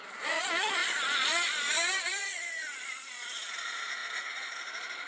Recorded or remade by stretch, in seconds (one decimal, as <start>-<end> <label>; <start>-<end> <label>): 0.0-5.1 remade